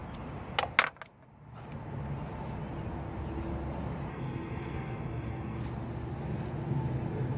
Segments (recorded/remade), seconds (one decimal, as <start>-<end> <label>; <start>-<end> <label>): 0.0-4.1 recorded; 4.1-5.6 remade; 5.6-7.4 recorded